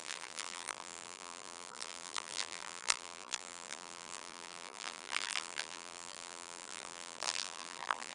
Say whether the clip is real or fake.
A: fake